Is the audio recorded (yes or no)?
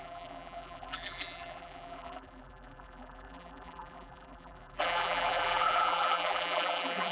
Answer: no